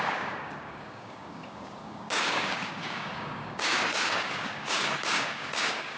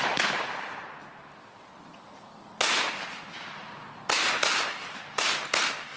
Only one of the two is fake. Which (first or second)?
first